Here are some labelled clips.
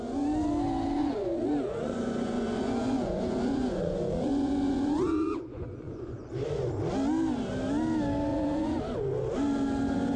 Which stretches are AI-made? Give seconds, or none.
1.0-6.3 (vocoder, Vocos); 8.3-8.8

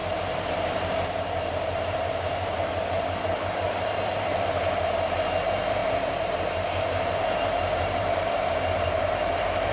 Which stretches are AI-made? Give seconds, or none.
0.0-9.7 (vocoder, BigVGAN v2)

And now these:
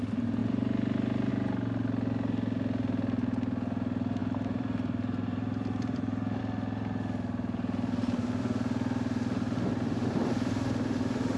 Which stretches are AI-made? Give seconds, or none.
4.2-6.4 (vocoder, BigVGAN v2)

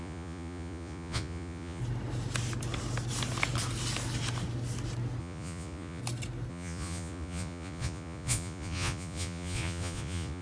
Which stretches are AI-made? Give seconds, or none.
0.0-1.8 (vocoder, Vocos); 5.2-6.0; 6.5-10.4

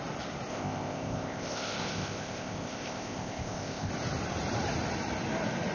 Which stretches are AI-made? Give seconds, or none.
0.5-3.9 (codec, ZipCodec)

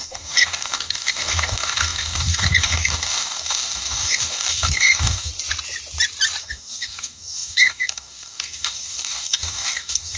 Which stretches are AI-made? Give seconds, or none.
0.0-5.3 (codec, DAC); 6.4-10.2